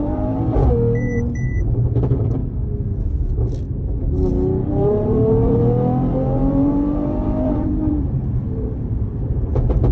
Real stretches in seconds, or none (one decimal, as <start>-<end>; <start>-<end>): 2.4-4.7